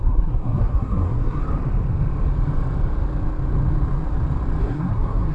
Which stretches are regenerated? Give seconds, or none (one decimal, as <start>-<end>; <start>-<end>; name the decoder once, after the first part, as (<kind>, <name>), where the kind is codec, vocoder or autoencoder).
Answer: 0.0-1.4 (codec, SNAC); 4.6-5.3